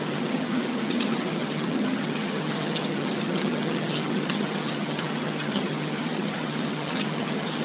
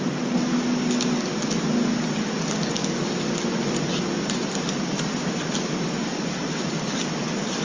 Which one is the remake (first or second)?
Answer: first